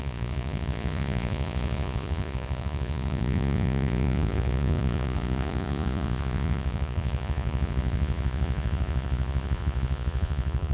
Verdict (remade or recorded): remade